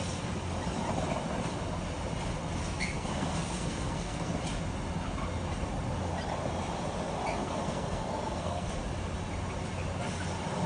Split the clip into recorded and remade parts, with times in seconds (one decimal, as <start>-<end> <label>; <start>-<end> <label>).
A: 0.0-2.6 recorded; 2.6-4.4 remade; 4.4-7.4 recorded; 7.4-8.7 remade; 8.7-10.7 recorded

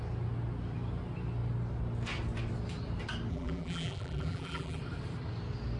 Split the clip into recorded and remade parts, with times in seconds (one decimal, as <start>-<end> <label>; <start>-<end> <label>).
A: 0.0-3.3 recorded; 3.3-4.8 remade; 4.8-5.8 recorded

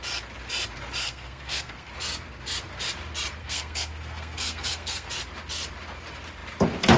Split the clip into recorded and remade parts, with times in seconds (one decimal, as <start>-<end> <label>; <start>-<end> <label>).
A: 0.0-1.0 recorded; 1.0-1.9 remade; 1.9-3.4 recorded; 3.4-5.1 remade; 5.1-7.0 recorded